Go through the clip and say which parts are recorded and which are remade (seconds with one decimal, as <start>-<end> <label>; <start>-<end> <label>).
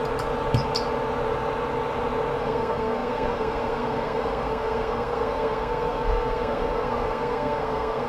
0.0-2.4 recorded; 2.4-8.1 remade